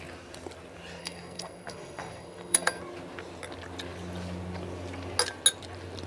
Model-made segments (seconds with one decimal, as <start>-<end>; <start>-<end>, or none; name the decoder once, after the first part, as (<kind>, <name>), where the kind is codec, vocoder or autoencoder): 1.0-2.8 (codec, SNAC)